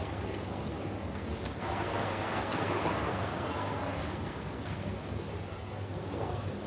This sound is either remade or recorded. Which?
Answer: remade